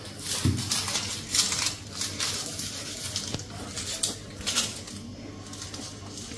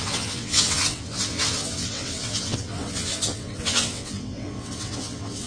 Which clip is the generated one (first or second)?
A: second